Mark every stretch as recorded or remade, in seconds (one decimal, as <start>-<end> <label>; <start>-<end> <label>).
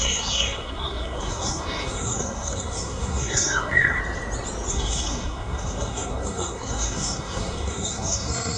0.0-4.0 remade; 4.0-4.7 recorded; 4.7-8.6 remade